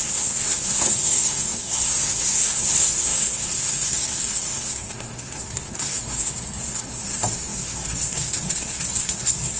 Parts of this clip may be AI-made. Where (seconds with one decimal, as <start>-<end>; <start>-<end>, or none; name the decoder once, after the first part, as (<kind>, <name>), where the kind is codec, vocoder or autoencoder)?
0.0-9.6 (codec, SNAC)